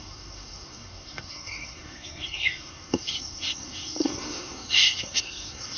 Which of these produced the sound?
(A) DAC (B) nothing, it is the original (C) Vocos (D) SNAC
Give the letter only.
D